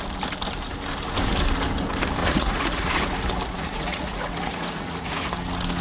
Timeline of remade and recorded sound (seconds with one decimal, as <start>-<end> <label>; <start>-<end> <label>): 0.0-2.2 recorded; 2.2-2.9 remade; 2.9-3.6 recorded; 3.6-5.3 remade; 5.3-5.8 recorded